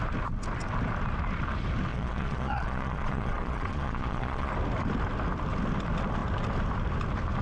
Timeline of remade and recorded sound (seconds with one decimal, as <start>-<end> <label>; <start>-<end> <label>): 0.0-1.9 recorded; 1.9-4.5 remade; 4.5-7.4 recorded